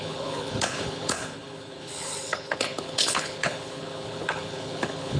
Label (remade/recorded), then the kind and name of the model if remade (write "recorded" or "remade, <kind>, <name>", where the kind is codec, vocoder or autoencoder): remade, codec, HILCodec